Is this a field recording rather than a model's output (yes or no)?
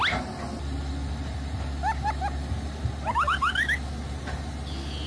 yes